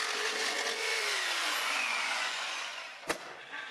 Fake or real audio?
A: fake